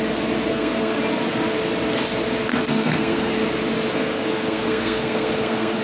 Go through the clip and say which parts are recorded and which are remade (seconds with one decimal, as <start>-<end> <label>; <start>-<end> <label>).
0.0-0.5 recorded; 0.5-1.0 remade; 1.0-2.5 recorded; 2.5-3.3 remade; 3.3-3.9 recorded; 3.9-5.8 remade